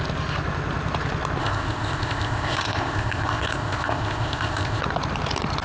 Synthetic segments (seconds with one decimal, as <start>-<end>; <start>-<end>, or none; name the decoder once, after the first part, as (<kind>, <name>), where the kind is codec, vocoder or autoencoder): 1.4-4.8 (codec, ZipCodec)